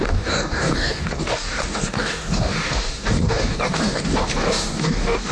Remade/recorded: remade